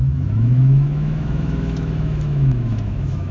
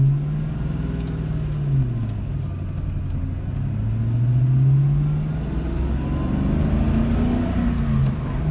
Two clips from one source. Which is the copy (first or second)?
first